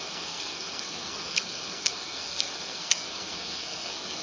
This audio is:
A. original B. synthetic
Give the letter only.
B